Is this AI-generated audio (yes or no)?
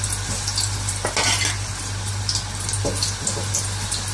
no